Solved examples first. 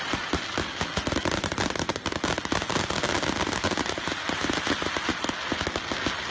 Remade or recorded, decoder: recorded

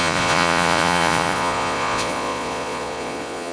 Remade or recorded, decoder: remade, vocoder, Vocos